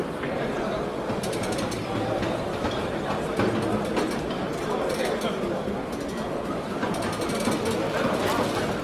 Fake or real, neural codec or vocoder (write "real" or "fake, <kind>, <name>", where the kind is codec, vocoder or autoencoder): real